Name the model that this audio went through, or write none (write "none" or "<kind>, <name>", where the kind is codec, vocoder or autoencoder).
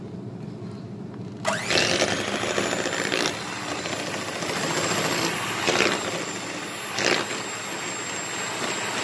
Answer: none